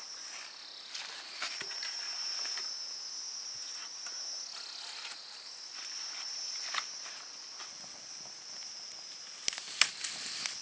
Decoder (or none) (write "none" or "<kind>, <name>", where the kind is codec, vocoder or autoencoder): none